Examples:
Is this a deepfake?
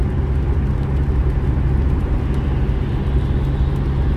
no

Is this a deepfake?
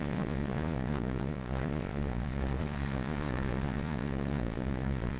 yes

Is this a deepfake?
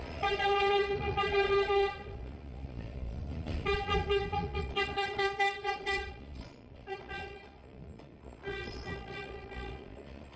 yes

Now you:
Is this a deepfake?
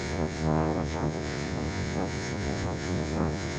yes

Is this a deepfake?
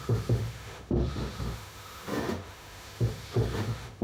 yes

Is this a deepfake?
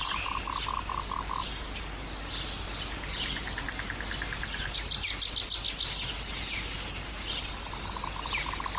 no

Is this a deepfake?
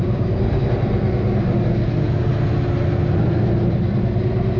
no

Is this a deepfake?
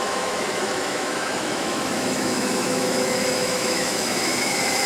yes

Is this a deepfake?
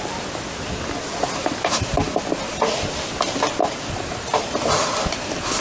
no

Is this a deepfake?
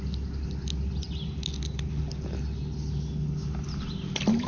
no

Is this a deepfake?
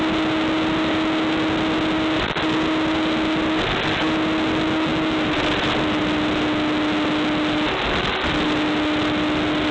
no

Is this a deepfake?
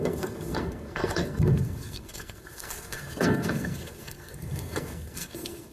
yes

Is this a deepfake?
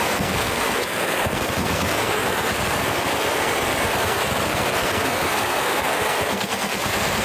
yes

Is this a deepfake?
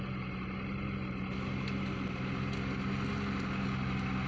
no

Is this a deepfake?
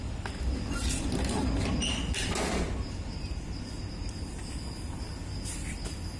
no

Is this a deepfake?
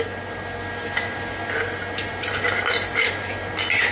no